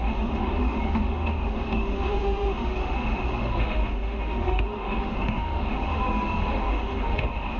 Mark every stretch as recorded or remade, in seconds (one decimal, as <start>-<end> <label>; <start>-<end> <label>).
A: 0.0-7.6 remade